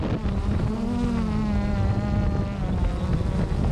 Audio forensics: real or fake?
real